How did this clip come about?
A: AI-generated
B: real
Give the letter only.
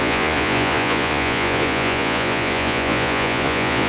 A